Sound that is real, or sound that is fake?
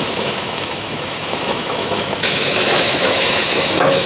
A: fake